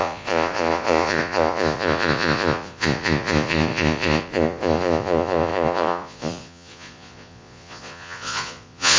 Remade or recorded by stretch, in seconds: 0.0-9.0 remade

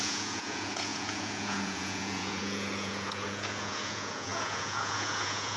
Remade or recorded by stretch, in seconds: 0.0-5.6 remade

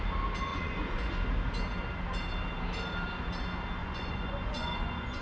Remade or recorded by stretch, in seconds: 0.0-0.5 recorded; 0.5-1.1 remade; 1.1-3.8 recorded; 3.8-5.2 remade

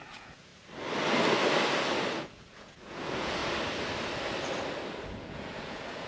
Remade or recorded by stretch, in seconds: 0.0-0.5 remade; 0.5-2.2 recorded; 2.2-3.4 remade; 3.4-5.1 recorded; 5.1-6.1 remade

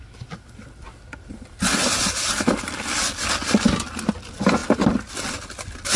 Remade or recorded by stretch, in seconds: 0.0-6.0 recorded